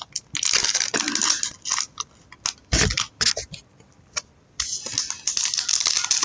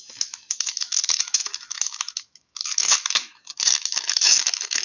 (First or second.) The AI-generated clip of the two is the second